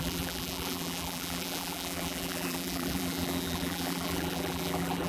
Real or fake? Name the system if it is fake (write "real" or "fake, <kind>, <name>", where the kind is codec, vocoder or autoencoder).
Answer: fake, vocoder, BigVGAN v2